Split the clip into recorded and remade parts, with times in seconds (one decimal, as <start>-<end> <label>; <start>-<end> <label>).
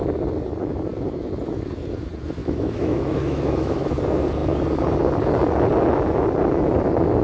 0.0-2.4 recorded; 2.4-3.9 remade; 3.9-7.2 recorded